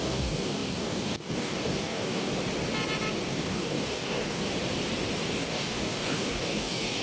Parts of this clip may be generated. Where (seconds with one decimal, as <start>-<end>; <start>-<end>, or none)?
0.0-2.3; 3.3-4.4; 5.3-7.0